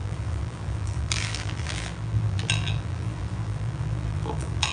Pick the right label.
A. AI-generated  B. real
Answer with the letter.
A